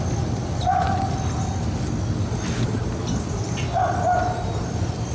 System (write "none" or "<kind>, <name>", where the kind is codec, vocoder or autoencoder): none